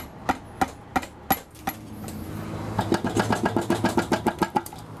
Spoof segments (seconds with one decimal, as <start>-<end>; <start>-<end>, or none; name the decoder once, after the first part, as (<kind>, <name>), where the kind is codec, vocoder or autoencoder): none